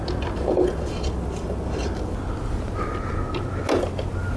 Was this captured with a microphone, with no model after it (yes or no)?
yes